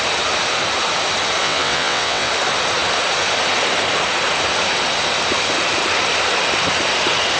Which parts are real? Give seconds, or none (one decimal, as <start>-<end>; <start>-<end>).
0.0-1.4; 2.3-7.4